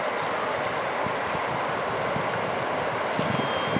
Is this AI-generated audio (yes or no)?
no